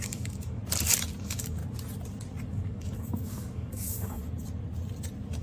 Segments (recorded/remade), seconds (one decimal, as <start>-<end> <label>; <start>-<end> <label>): 0.0-0.6 remade; 0.6-1.2 recorded; 1.2-1.6 remade; 1.6-2.5 recorded; 2.5-4.2 remade; 4.2-5.4 recorded